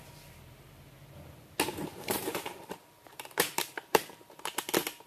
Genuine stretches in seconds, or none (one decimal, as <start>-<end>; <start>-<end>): 0.0-1.9; 4.6-5.1